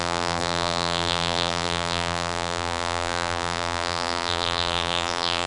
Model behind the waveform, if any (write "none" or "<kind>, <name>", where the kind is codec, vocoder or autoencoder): vocoder, BigVGAN v2